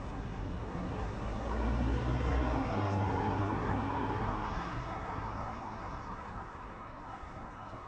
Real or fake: fake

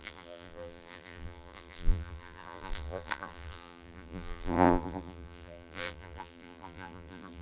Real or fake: fake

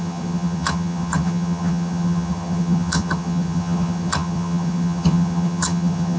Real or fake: fake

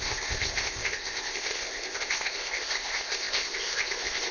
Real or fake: fake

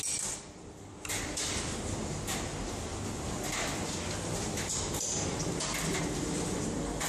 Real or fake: real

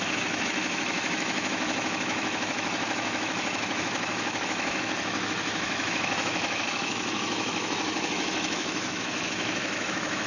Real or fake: fake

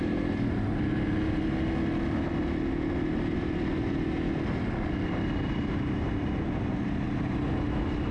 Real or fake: real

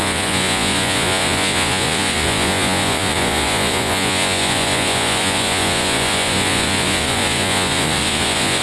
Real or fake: fake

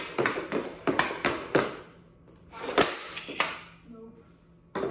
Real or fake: real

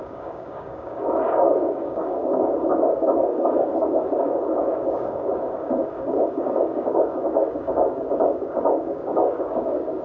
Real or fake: fake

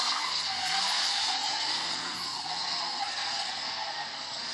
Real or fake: fake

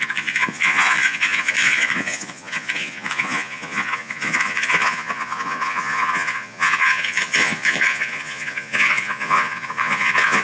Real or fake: fake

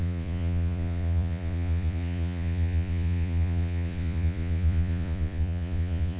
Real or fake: fake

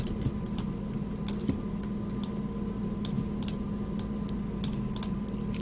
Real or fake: real